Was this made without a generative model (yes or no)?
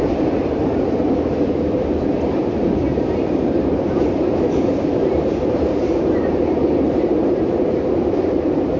no